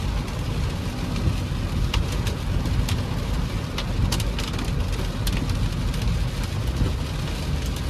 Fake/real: real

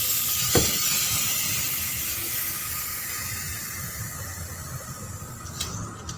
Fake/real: real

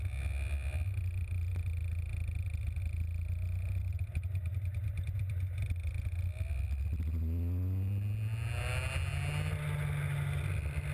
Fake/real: real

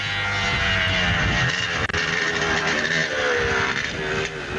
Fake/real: real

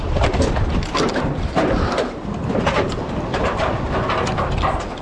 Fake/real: real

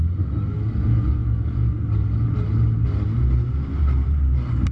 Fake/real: real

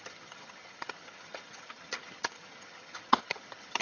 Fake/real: fake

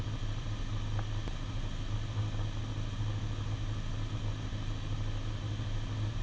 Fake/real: real